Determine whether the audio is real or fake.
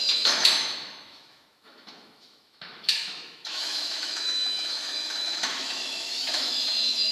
fake